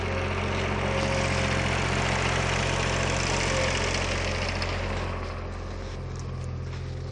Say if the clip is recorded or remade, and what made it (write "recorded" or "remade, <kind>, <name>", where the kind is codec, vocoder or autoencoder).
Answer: recorded